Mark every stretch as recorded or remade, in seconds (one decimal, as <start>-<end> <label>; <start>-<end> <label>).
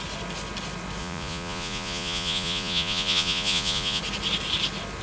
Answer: 0.0-1.0 recorded; 1.0-4.0 remade; 4.0-5.0 recorded